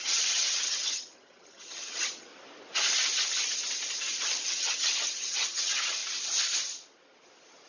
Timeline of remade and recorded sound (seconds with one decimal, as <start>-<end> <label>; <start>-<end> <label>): 0.0-2.3 remade; 2.3-4.5 recorded; 4.5-6.0 remade; 6.0-7.7 recorded